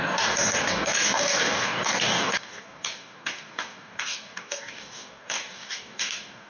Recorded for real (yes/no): no